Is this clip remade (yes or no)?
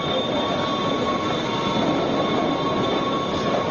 no